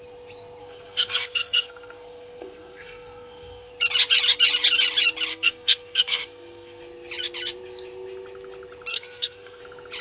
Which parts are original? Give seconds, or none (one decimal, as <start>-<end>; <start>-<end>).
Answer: 0.0-0.6; 3.7-5.3; 6.8-8.9; 9.6-10.0